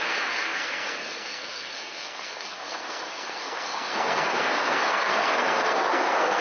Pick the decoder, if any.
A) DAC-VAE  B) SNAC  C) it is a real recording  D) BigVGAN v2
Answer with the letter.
B